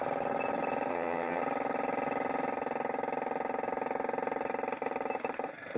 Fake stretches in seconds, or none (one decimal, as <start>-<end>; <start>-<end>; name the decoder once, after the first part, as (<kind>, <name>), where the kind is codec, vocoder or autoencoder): 0.9-1.4 (vocoder, HiFi-GAN)